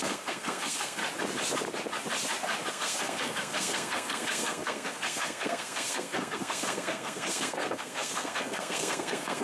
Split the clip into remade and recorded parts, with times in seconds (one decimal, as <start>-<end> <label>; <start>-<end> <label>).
0.0-1.0 remade; 1.0-2.7 recorded; 2.7-9.4 remade